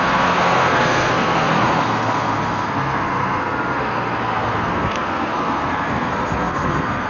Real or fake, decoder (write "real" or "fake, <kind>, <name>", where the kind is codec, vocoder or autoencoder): fake, codec, SNAC